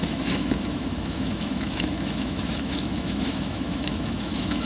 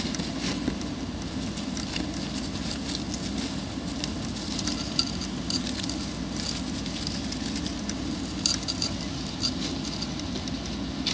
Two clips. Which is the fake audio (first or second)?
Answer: first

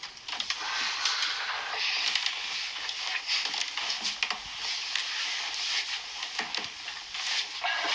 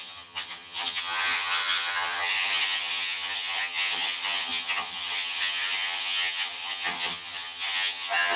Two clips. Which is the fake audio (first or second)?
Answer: second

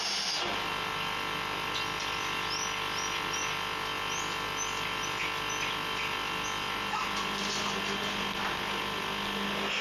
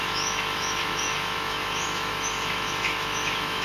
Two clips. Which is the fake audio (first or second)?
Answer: second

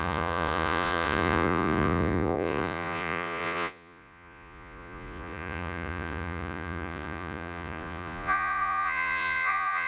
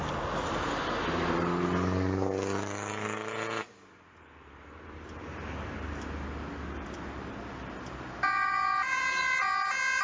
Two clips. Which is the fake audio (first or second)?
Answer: first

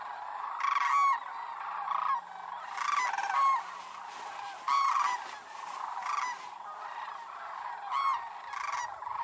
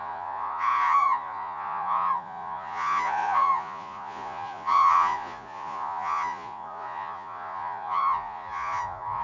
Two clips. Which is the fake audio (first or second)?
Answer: second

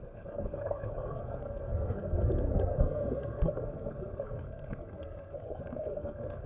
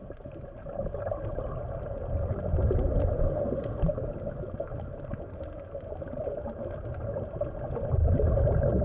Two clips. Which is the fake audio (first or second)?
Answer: first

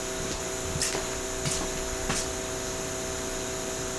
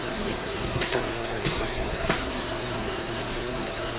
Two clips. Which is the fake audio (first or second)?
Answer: second